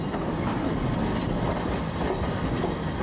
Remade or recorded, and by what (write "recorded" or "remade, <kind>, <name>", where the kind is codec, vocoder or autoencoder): recorded